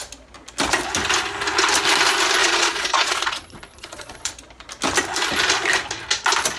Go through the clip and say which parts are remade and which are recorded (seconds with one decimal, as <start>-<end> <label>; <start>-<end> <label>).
0.0-2.4 recorded; 2.4-4.3 remade; 4.3-6.6 recorded

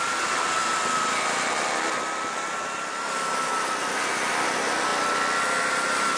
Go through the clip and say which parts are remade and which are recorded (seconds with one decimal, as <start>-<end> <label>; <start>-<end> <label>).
0.0-6.2 recorded